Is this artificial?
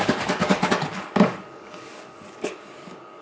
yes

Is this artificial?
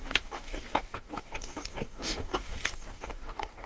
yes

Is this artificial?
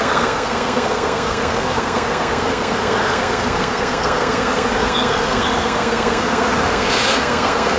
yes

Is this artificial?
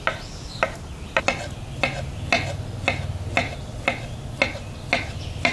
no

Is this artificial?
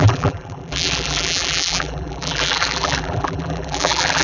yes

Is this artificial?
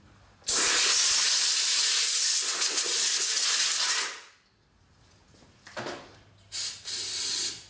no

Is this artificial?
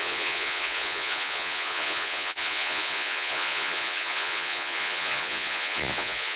yes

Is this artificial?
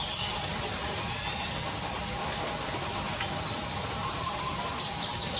no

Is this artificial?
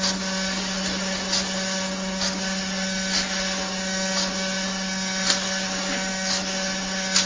no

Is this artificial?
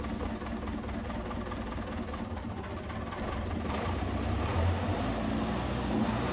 no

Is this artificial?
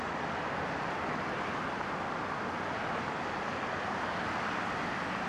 no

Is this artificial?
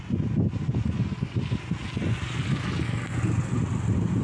no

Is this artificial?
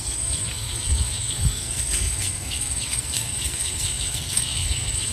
yes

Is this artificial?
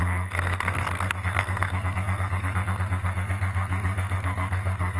yes